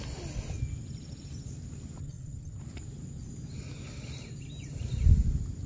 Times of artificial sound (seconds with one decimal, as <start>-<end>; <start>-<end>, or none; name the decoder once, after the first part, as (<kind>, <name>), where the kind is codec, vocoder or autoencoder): 2.0-2.6 (vocoder, HiFi-GAN)